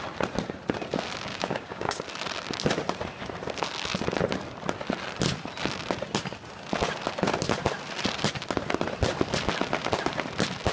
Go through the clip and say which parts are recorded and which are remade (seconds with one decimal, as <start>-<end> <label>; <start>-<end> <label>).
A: 0.0-1.3 recorded; 1.3-2.0 remade; 2.0-10.7 recorded